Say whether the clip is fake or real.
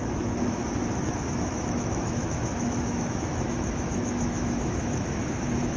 fake